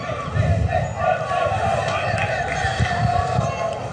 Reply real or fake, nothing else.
real